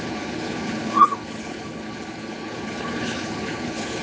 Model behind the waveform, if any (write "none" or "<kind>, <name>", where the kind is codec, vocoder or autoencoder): codec, HILCodec